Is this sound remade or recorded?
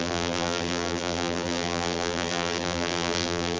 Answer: remade